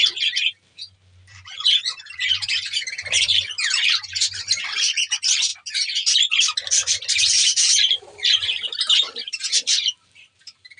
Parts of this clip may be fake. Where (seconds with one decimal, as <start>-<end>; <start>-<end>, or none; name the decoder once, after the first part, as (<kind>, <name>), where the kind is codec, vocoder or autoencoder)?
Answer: 0.0-5.5 (vocoder, BigVGAN v2); 7.1-10.8